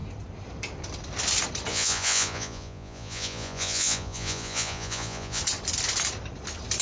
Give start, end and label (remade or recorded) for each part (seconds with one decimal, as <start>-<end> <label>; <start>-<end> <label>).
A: 0.0-1.7 recorded; 1.7-5.4 remade; 5.4-6.8 recorded